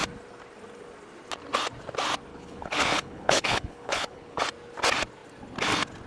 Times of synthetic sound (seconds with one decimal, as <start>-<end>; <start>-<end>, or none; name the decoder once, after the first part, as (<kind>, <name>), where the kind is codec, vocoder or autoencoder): 2.3-4.4 (codec, HILCodec)